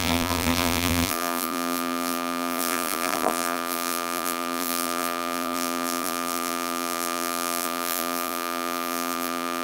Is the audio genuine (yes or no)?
no